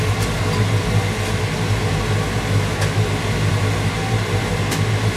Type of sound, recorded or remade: recorded